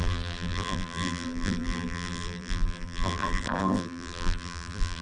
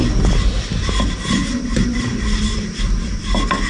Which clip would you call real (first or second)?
second